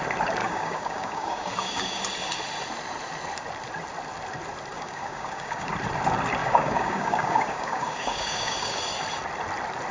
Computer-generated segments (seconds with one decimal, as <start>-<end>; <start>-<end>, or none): 0.4-2.0; 4.7-5.7; 6.4-8.8